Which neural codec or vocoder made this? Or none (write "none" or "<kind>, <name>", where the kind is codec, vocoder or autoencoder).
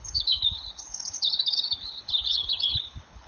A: codec, HILCodec